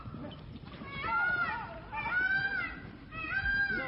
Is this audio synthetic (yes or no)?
no